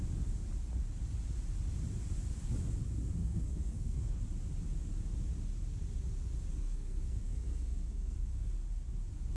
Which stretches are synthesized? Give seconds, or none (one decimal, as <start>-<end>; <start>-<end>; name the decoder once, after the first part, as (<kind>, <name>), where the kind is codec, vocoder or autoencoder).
3.2-4.2 (codec, SNAC); 6.5-8.5